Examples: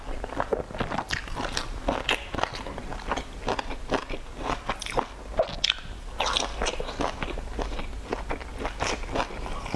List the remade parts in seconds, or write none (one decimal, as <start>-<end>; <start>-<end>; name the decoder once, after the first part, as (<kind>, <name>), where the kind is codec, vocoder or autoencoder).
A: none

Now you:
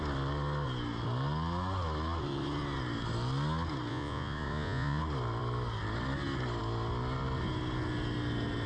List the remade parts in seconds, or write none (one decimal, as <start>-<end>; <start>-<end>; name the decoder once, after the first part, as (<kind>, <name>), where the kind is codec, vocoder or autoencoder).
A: 3.9-5.0 (vocoder, Vocos)

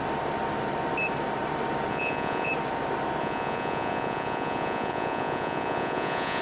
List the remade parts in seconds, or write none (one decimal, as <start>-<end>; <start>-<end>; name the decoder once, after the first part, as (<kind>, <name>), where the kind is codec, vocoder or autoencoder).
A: 1.9-2.5 (vocoder, Vocos); 3.2-6.4

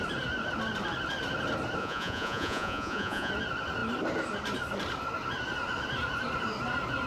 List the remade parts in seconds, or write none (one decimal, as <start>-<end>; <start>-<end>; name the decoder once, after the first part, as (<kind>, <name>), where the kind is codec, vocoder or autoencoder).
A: 1.8-3.3 (vocoder, Vocos)